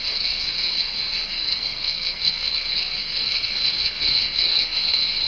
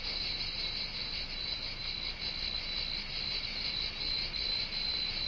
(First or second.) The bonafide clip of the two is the second